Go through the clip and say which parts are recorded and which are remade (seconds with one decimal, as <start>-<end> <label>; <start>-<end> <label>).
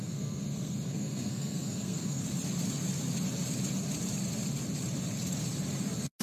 0.0-2.2 remade; 2.2-6.2 recorded